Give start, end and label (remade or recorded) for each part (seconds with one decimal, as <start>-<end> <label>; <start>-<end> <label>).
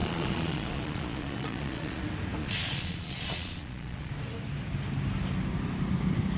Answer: 0.0-2.0 remade; 2.0-2.4 recorded; 2.4-4.1 remade; 4.1-6.4 recorded